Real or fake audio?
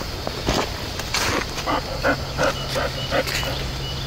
real